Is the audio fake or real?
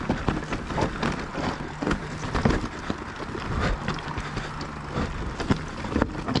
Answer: real